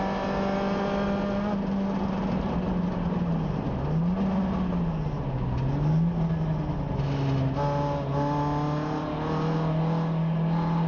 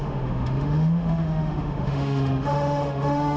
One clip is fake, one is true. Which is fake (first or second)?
second